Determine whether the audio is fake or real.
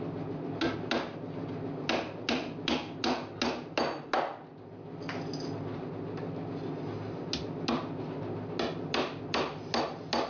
real